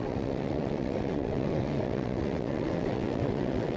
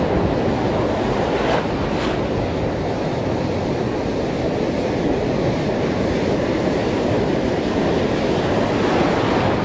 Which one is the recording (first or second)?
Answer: second